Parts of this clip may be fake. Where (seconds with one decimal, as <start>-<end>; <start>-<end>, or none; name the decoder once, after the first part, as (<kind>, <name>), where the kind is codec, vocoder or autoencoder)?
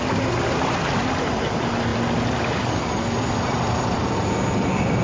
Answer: none